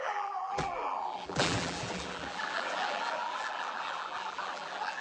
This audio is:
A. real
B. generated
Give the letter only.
B